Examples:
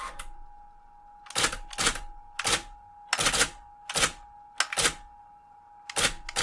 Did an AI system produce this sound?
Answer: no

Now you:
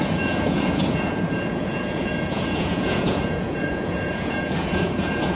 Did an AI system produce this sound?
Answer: yes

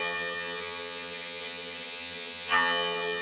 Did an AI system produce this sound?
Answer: yes